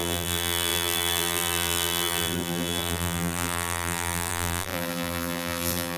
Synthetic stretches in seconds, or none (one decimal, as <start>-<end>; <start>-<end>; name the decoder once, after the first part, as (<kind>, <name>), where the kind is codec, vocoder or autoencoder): 0.0-6.0 (vocoder, BigVGAN v2)